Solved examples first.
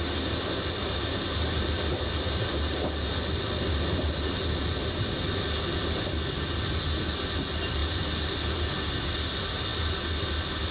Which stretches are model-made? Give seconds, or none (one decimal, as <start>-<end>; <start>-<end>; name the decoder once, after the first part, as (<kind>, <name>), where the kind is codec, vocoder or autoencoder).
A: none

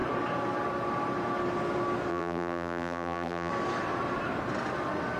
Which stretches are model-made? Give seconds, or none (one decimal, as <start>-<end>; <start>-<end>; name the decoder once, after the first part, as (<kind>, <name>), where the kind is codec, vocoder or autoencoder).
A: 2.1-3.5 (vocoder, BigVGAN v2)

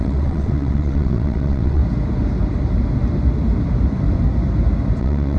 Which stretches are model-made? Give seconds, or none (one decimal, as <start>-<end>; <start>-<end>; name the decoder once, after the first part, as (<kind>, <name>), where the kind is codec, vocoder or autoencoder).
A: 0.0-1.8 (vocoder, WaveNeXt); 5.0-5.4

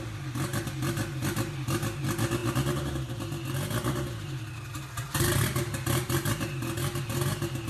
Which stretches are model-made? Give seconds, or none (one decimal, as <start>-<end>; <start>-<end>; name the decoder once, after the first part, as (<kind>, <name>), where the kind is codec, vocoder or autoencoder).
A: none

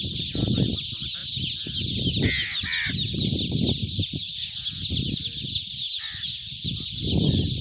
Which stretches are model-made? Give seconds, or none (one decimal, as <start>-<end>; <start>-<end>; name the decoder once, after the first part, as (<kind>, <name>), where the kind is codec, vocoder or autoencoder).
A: none

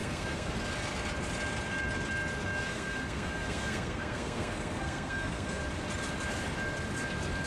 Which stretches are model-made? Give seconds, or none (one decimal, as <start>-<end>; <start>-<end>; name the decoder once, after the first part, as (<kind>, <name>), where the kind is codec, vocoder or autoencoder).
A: 0.0-0.5 (codec, SNAC); 2.7-5.6